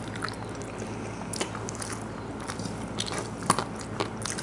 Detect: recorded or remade recorded